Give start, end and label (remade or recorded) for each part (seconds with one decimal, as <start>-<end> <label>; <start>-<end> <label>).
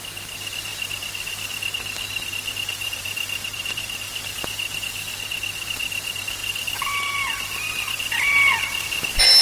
0.0-2.7 recorded; 2.7-4.1 remade; 4.1-6.4 recorded; 6.4-8.8 remade; 8.8-9.4 recorded